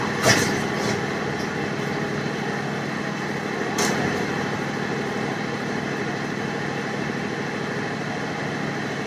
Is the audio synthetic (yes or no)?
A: no